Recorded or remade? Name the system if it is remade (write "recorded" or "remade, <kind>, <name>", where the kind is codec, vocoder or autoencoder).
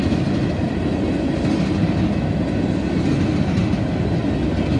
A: recorded